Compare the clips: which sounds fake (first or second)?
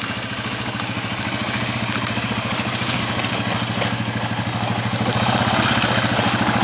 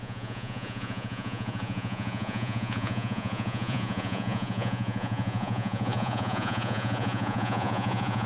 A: second